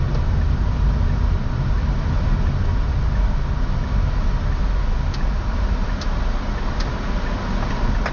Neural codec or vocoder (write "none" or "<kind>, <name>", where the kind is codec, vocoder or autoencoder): none